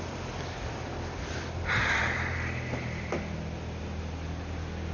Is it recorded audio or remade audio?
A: recorded